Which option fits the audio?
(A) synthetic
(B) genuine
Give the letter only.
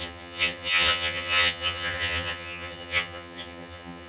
A